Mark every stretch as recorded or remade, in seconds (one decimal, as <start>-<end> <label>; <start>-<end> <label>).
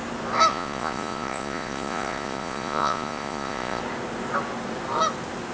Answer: 0.0-0.5 recorded; 0.5-3.8 remade; 3.8-5.5 recorded